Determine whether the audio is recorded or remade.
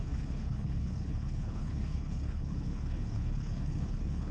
remade